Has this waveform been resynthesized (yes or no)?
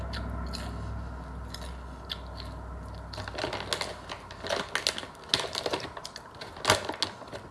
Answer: no